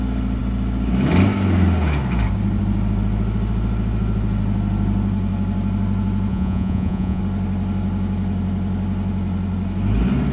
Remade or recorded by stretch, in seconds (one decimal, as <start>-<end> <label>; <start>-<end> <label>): 0.0-6.3 recorded; 6.3-7.2 remade; 7.2-10.3 recorded